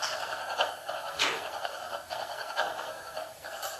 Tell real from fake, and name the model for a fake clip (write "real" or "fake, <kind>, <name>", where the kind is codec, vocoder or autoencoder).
fake, codec, SNAC